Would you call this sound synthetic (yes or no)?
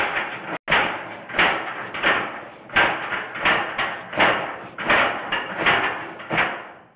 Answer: no